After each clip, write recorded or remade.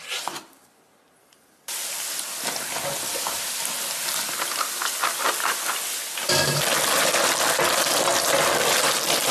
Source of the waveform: recorded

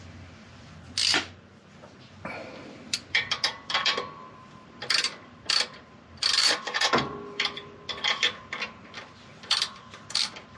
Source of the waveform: remade